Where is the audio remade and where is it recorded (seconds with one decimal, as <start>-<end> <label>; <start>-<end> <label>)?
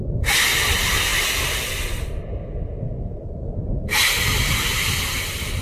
0.0-5.6 recorded